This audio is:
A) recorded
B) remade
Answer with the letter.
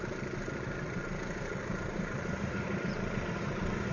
B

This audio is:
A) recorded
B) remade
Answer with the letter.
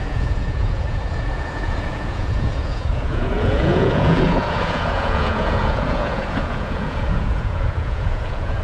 B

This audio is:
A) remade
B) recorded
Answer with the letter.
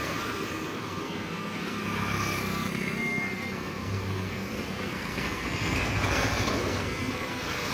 A